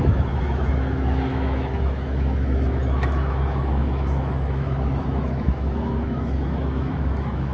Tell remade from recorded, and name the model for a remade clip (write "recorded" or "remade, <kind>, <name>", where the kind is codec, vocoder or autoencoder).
remade, autoencoder, DAC-VAE